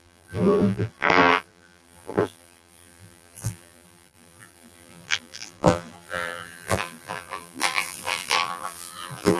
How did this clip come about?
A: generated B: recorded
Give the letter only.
A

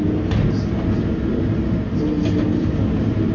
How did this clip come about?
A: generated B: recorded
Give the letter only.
B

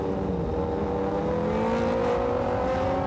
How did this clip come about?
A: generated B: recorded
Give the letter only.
B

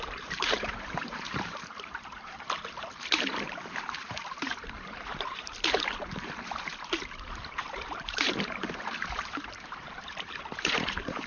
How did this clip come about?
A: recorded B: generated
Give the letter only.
B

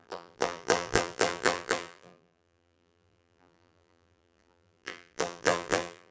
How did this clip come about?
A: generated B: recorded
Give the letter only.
A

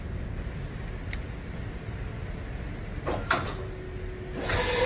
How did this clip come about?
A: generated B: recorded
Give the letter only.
B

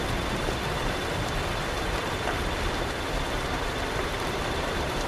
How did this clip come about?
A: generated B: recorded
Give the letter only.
A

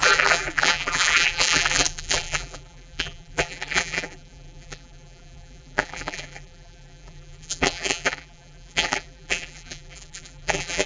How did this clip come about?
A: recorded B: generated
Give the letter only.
B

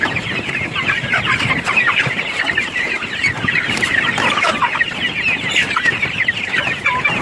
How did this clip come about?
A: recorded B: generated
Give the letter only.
B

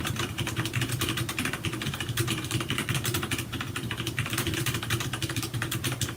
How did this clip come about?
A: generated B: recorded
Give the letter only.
A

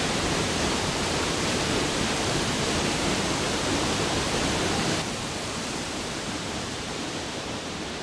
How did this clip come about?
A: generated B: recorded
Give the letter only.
A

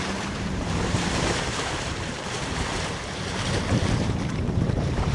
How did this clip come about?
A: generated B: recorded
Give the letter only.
A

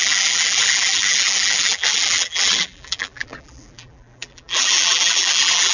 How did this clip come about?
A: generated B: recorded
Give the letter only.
A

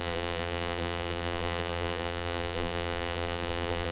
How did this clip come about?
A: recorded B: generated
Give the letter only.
B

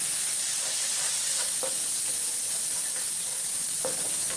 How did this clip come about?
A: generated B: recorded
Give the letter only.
A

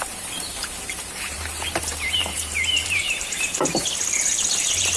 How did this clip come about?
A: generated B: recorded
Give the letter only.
A